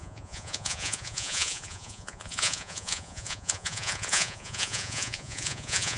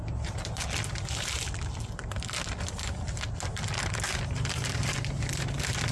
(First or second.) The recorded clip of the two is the second